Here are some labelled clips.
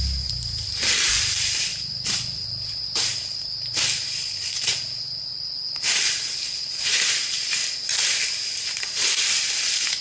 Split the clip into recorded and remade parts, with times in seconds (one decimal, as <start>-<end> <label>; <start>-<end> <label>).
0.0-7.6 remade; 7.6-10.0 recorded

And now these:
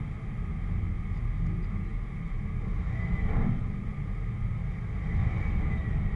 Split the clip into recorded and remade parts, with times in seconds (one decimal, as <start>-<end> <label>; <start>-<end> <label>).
0.0-6.2 recorded

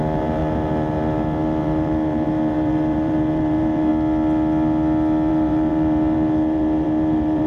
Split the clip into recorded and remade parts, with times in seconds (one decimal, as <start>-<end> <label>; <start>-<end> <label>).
0.0-3.9 remade; 3.9-5.3 recorded; 5.3-7.5 remade

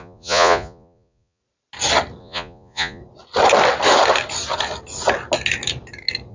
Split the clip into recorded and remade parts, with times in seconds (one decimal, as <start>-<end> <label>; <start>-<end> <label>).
0.0-1.4 remade; 1.4-2.2 recorded; 2.2-3.0 remade; 3.0-6.3 recorded

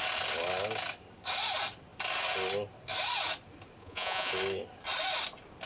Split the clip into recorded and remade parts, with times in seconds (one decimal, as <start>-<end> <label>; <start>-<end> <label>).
0.0-3.8 recorded; 3.8-4.3 remade; 4.3-5.7 recorded